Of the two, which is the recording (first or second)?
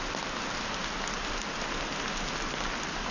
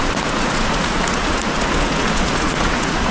first